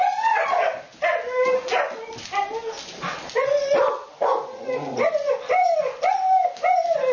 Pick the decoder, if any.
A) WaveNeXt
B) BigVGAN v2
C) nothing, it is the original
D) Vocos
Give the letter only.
C